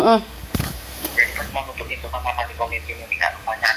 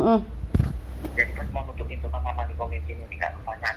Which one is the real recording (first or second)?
second